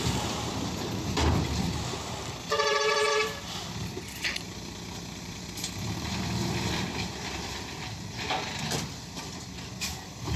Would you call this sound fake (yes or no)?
yes